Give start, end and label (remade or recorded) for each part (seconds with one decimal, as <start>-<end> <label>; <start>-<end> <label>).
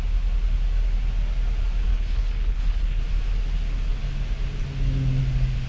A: 0.0-1.9 recorded; 1.9-3.0 remade; 3.0-5.7 recorded